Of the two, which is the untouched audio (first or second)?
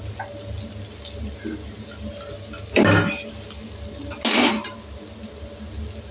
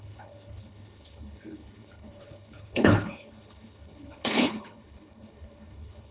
first